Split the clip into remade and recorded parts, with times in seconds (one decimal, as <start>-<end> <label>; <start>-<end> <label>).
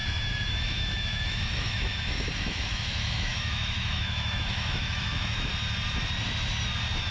0.0-5.5 remade; 5.5-7.1 recorded